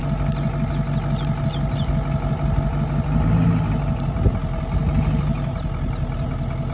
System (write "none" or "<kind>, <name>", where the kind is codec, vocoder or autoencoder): none